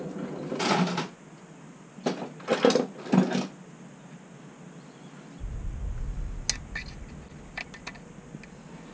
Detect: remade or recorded recorded